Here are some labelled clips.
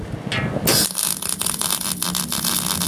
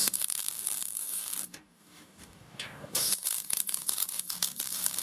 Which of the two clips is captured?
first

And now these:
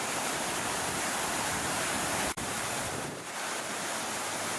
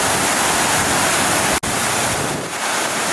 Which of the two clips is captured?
second